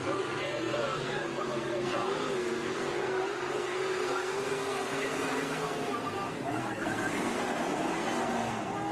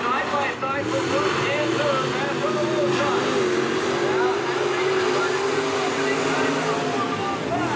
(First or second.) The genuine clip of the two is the second